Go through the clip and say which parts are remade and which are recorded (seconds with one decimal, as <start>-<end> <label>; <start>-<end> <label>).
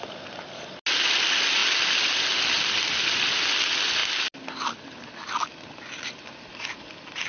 0.0-7.3 recorded